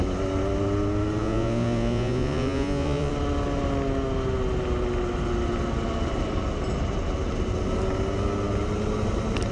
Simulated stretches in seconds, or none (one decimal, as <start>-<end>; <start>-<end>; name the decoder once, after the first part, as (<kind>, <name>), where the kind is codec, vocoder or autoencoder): 1.2-3.1 (vocoder, Vocos)